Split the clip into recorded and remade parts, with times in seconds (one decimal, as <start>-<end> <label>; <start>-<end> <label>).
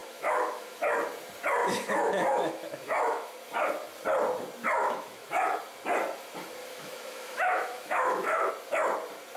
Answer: 0.0-0.8 remade; 0.8-1.6 recorded; 1.6-3.3 remade; 3.3-4.8 recorded; 4.8-5.6 remade; 5.6-6.6 recorded; 6.6-8.5 remade; 8.5-9.4 recorded